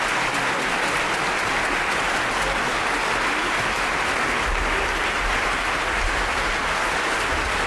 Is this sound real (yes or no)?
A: yes